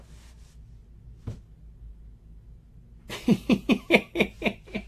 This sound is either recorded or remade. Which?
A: recorded